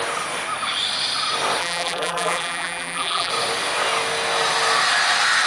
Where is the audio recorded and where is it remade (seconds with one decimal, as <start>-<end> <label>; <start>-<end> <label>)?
0.0-1.6 recorded; 1.6-3.3 remade; 3.3-5.5 recorded